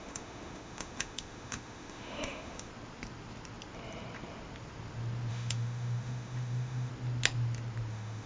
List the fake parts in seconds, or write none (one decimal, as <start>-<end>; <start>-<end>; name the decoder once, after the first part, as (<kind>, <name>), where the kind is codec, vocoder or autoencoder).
0.0-2.7 (autoencoder, DAC-VAE); 5.3-6.9; 7.9-8.3